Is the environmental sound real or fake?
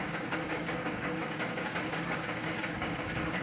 fake